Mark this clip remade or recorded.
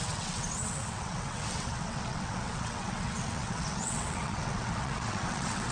remade